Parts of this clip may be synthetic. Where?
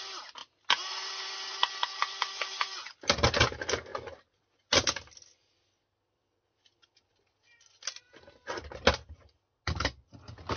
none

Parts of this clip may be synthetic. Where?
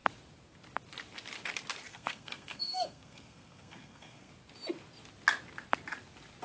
1.9-4.3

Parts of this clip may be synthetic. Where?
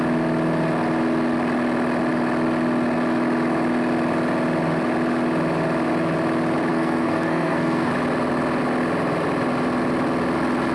6.7-7.9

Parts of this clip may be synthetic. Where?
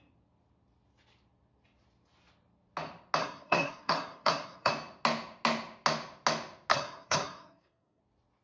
3.2-4.7; 6.7-8.0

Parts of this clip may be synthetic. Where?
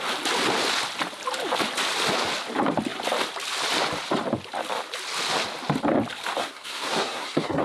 6.4-7.6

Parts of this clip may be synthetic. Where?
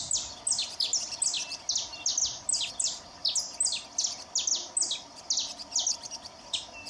none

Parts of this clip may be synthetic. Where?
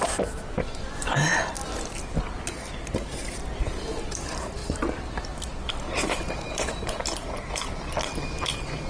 none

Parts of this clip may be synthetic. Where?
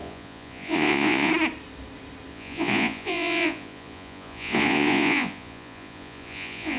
0.0-1.3; 2.3-6.8